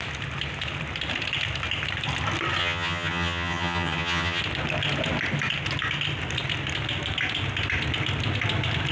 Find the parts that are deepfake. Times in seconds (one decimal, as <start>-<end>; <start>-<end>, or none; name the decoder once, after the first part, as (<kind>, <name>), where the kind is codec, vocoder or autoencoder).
2.6-4.4 (vocoder, HiFi-GAN)